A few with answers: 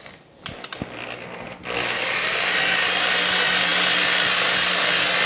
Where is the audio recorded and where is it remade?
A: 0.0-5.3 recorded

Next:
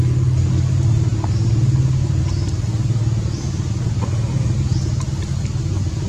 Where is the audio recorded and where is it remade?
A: 0.0-6.1 recorded

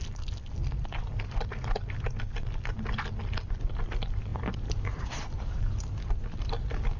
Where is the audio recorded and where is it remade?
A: 0.0-7.0 recorded

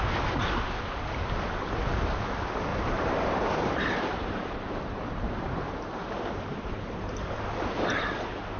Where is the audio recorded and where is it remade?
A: 0.0-2.7 recorded; 2.7-7.5 remade; 7.5-8.6 recorded

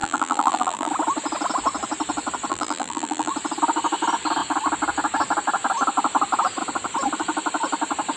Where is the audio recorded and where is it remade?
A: 0.0-0.9 remade; 0.9-2.5 recorded; 2.5-3.3 remade; 3.3-8.2 recorded